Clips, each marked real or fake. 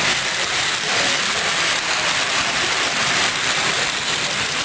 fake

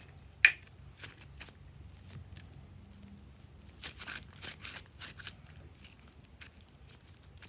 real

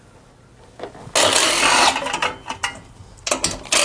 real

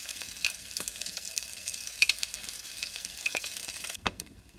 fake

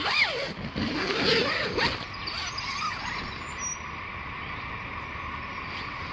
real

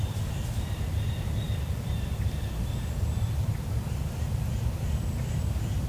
fake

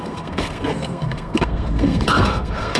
fake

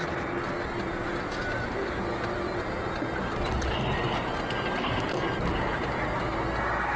real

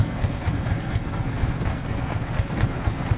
fake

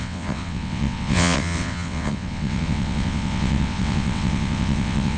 fake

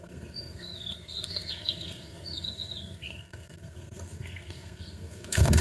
fake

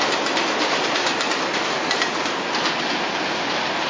real